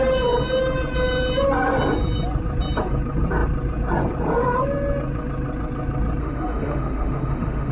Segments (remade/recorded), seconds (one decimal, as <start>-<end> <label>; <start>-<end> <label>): 0.0-6.2 recorded; 6.2-7.7 remade